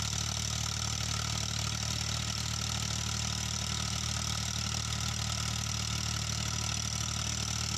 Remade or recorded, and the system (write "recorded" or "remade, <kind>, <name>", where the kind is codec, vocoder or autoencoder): recorded